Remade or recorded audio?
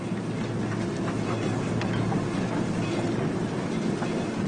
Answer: recorded